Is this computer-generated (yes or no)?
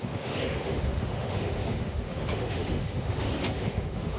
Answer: yes